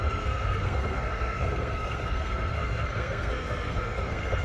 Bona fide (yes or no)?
no